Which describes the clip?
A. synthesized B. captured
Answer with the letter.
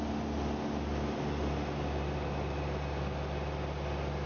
B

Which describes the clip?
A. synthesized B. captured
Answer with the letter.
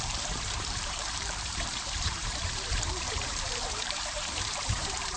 A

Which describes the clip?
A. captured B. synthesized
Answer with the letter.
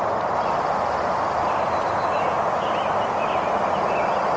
A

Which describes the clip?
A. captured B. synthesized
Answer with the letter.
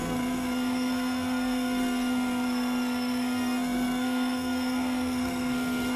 B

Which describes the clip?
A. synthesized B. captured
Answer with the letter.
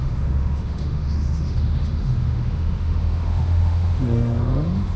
A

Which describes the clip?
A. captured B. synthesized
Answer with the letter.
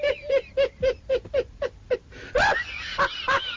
A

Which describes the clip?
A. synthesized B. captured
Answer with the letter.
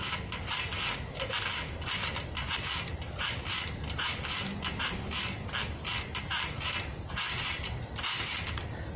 B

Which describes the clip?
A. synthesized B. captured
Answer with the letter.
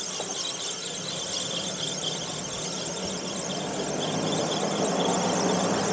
B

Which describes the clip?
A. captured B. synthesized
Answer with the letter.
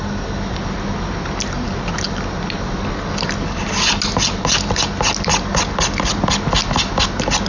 A